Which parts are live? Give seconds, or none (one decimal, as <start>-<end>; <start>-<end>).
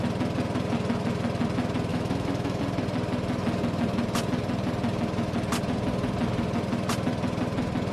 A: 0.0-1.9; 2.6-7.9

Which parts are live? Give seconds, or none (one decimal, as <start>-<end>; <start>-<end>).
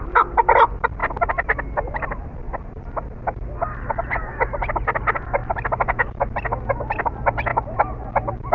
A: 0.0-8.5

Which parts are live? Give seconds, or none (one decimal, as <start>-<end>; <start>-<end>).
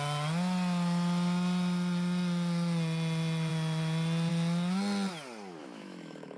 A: 0.0-5.6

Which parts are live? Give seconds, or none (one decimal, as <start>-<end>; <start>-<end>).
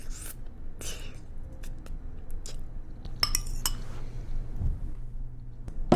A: 0.0-6.0